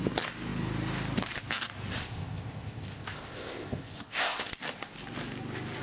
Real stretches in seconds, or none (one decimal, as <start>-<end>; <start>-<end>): 0.0-2.0; 4.5-5.8